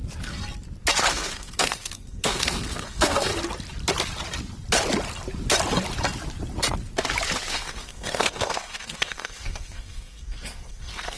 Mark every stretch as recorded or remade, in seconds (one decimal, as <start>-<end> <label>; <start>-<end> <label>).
0.0-1.1 recorded; 1.1-3.3 remade; 3.3-7.5 recorded; 7.5-11.2 remade